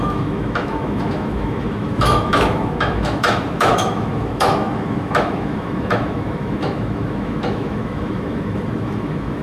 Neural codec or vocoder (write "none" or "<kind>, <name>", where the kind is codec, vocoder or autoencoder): autoencoder, DAC-VAE